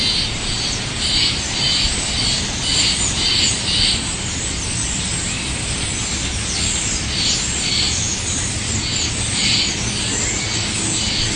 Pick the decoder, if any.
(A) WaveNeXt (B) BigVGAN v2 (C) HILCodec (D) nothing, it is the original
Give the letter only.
D